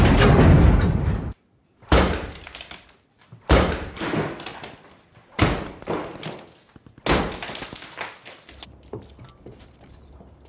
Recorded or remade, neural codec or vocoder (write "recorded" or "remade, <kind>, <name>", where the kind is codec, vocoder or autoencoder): recorded